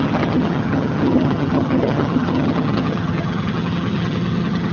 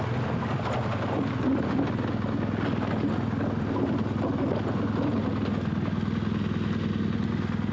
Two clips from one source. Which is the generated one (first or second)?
first